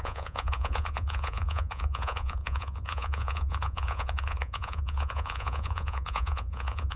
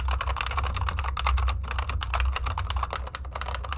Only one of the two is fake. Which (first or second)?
first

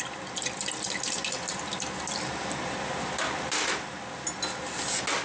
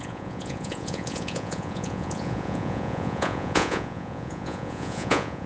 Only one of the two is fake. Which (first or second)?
second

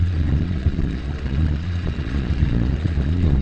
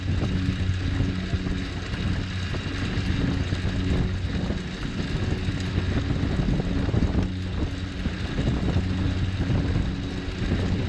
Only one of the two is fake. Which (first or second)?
first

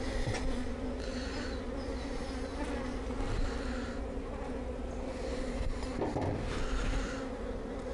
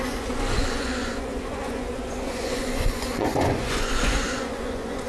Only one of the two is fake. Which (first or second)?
second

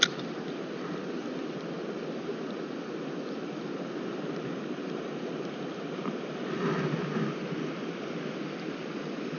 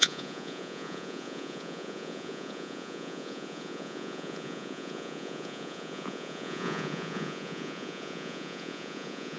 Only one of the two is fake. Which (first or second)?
second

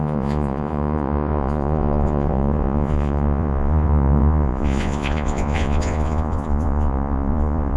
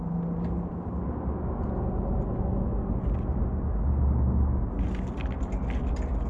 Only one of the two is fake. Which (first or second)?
first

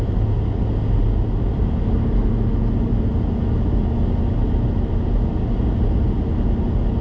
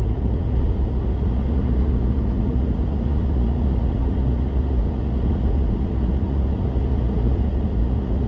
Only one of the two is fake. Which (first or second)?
second